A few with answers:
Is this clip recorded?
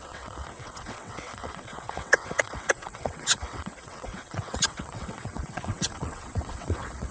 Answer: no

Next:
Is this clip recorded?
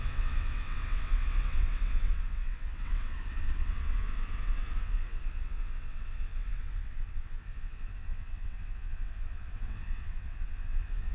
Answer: no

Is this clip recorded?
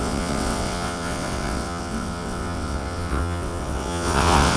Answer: no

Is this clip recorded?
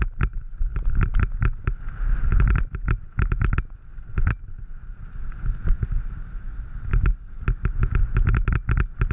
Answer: yes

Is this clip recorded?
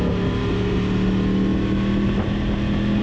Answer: yes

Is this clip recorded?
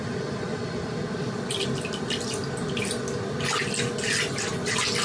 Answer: yes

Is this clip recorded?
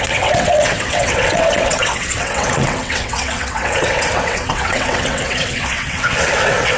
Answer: no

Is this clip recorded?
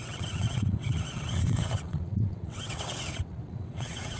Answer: no